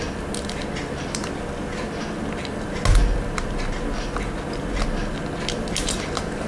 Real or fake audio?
real